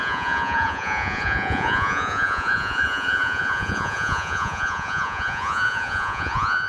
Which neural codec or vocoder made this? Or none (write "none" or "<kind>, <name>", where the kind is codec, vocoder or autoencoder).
vocoder, Vocos